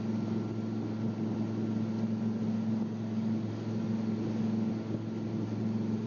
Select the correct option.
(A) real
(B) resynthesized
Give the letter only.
A